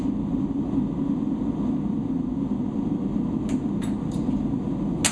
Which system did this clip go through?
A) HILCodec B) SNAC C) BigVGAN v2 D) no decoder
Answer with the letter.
D